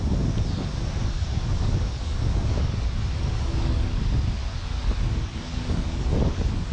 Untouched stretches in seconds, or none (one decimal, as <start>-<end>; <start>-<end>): 0.0-1.0; 4.0-4.4